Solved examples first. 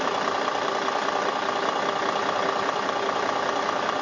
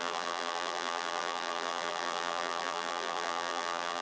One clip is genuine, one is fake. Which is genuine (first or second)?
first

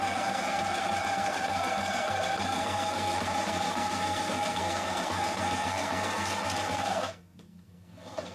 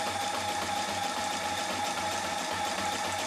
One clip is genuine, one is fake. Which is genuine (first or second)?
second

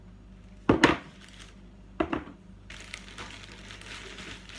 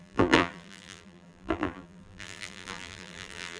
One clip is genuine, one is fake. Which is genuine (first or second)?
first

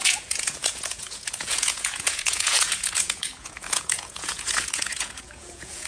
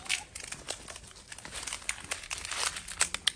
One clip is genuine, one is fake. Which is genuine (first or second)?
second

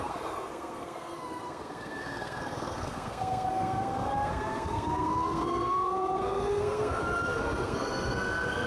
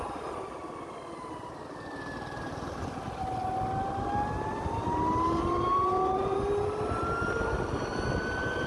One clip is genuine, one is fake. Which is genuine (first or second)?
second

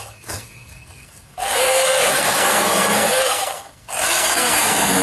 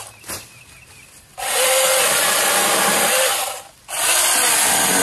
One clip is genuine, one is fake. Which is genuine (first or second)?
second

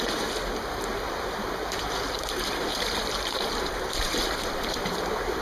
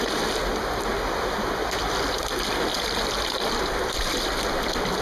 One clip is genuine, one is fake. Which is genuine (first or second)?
second